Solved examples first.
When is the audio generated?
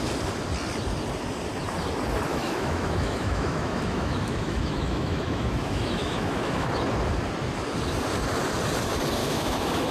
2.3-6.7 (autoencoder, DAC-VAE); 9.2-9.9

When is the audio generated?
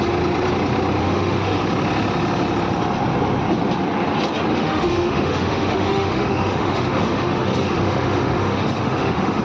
1.0-1.6 (autoencoder, DAC-VAE); 4.5-9.4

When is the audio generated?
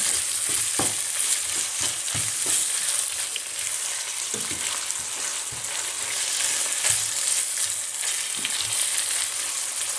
none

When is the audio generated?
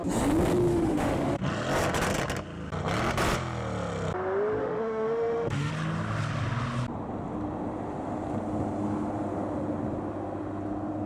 0.7-1.4 (autoencoder, DAC-VAE); 4.6-5.7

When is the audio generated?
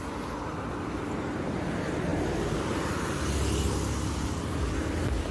none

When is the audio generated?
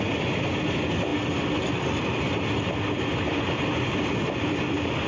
none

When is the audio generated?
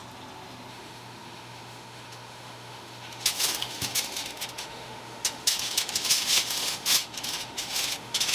0.7-8.3 (autoencoder, DAC-VAE)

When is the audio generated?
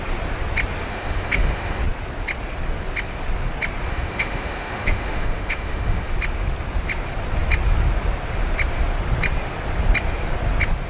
0.9-1.8 (autoencoder, DAC-VAE); 3.9-6.1